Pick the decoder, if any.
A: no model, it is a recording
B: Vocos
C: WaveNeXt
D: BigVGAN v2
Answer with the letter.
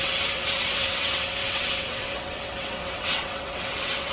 C